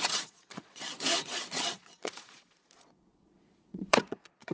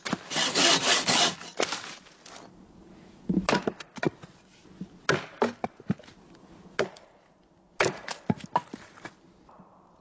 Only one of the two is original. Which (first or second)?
second